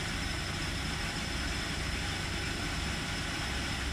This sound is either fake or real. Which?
real